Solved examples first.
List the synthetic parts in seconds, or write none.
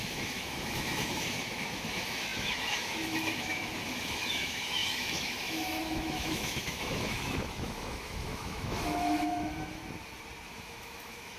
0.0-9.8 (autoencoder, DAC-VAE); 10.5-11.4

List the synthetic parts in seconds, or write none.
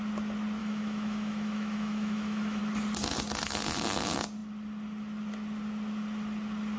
0.6-2.6 (autoencoder, DAC-VAE)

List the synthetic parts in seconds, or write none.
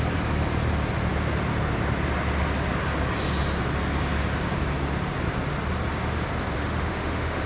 6.6-7.5 (autoencoder, DAC-VAE)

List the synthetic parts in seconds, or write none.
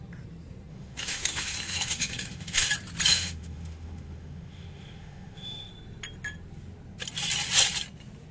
0.7-2.7 (autoencoder, DAC-VAE); 3.1-5.7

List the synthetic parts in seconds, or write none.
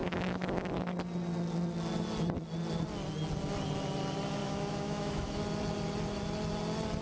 0.0-0.7 (autoencoder, DAC-VAE); 4.4-5.4